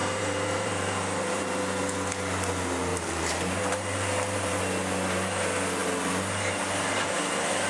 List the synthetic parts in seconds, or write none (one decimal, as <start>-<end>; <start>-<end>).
0.0-1.4; 2.9-4.6